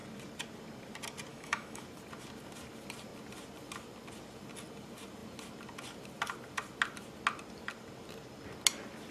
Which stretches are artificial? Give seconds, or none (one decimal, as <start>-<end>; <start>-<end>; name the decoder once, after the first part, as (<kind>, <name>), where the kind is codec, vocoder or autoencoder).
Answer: 1.3-1.8 (autoencoder, DAC-VAE)